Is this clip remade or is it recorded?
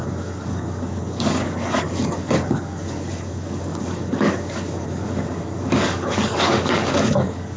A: remade